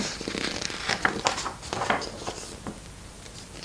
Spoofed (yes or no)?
no